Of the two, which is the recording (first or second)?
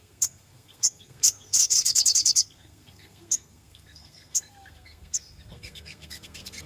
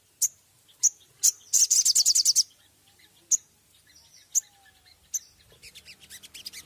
second